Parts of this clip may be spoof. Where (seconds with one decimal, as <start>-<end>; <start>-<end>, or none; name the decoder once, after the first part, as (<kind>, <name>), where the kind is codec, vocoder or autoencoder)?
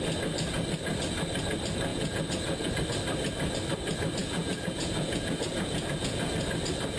1.9-2.7 (vocoder, Vocos); 4.2-6.3